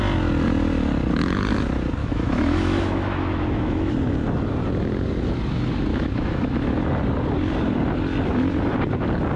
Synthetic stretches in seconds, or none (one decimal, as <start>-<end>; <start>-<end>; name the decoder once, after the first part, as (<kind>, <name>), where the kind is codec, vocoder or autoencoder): 2.0-3.9 (autoencoder, DAC-VAE); 5.9-6.8